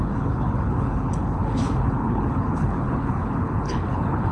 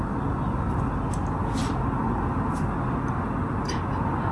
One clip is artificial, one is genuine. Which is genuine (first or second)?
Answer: second